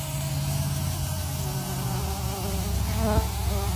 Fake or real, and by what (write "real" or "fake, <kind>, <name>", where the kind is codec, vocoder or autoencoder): real